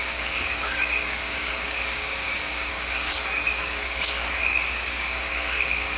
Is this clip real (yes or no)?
no